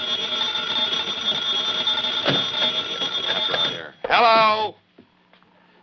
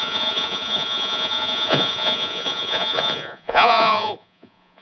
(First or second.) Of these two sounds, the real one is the first